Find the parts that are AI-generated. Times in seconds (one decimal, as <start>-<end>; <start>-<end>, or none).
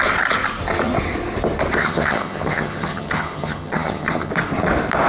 1.8-4.3